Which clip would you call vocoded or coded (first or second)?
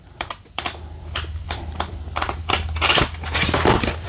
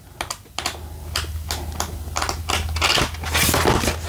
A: first